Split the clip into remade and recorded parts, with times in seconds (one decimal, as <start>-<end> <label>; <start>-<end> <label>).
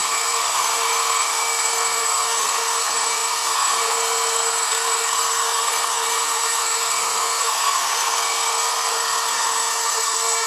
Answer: 0.0-10.5 remade